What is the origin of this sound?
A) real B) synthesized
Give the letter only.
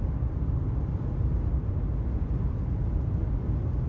A